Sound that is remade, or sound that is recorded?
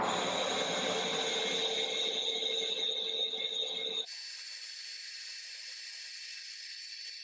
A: recorded